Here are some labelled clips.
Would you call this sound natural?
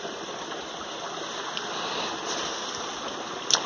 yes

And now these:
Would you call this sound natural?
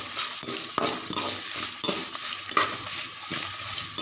yes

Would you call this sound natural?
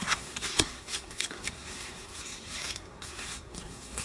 no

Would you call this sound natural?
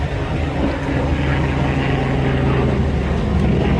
yes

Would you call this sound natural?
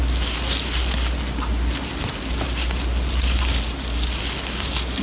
yes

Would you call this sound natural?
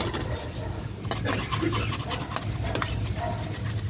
yes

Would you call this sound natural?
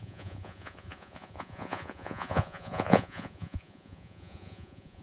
no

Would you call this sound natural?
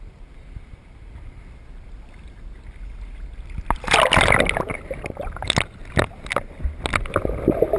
yes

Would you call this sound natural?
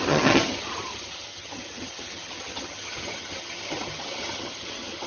no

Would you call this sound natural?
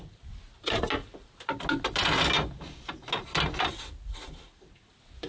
yes